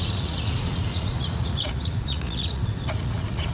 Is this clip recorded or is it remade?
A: remade